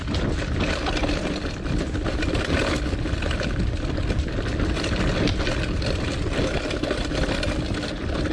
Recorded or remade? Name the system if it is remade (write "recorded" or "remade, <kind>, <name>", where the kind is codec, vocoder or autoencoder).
recorded